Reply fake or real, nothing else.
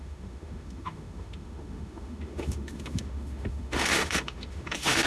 fake